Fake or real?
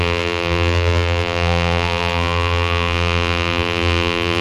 fake